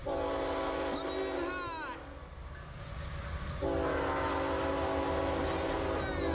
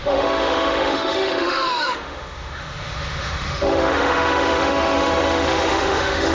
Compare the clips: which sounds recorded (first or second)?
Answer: first